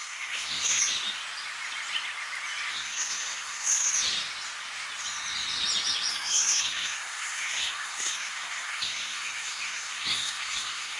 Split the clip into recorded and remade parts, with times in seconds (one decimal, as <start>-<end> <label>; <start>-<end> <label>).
0.0-0.8 remade; 0.8-2.7 recorded; 2.7-3.9 remade; 3.9-6.1 recorded; 6.1-11.0 remade